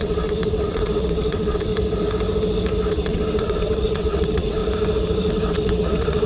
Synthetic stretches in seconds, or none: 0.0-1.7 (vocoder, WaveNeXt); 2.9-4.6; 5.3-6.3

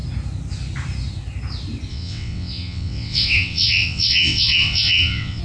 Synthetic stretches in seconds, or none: 1.9-5.4 (vocoder, WaveNeXt)

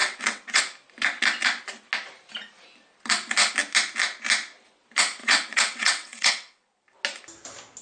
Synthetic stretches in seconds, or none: 0.0-0.6 (vocoder, WaveNeXt); 5.2-6.7

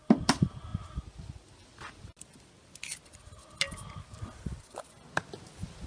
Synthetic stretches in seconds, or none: none

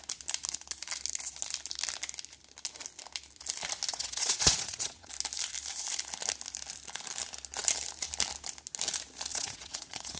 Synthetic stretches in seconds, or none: 3.9-5.1 (vocoder, WaveNeXt); 9.3-10.2